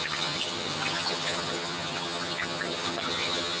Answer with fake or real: fake